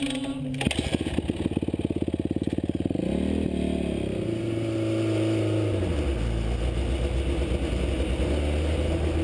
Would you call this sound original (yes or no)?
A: yes